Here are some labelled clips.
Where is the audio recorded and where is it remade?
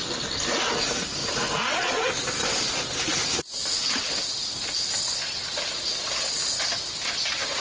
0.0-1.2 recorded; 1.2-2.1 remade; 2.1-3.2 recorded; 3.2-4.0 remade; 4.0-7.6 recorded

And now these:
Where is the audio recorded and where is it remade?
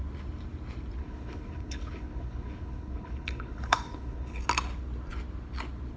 0.0-1.0 recorded; 1.0-4.4 remade; 4.4-6.0 recorded